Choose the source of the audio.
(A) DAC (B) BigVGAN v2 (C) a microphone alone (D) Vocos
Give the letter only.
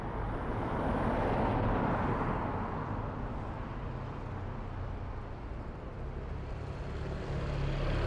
C